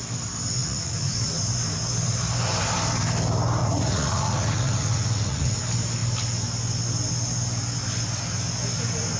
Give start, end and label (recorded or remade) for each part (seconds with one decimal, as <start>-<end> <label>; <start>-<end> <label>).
0.0-0.6 recorded; 0.6-1.3 remade; 1.3-3.6 recorded; 3.6-5.6 remade; 5.6-9.2 recorded